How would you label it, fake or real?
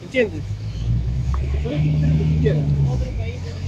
fake